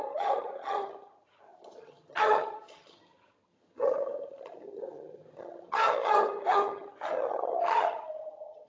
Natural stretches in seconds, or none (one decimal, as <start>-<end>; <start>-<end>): none